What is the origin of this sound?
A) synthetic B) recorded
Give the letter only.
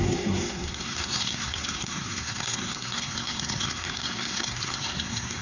A